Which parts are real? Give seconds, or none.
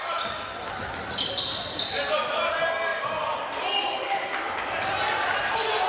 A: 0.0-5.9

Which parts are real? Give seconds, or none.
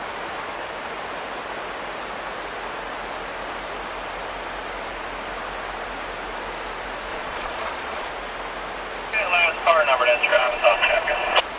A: 0.0-7.1; 8.1-10.3